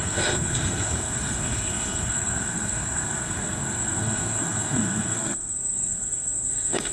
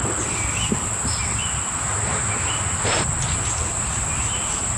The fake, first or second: first